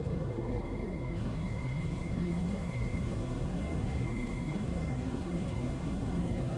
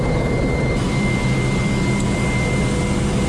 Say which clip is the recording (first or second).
second